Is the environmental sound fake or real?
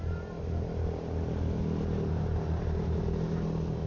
real